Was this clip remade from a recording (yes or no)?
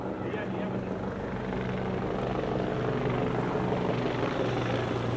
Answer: no